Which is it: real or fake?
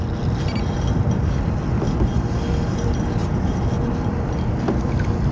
real